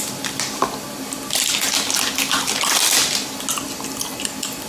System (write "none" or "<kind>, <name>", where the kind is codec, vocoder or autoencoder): none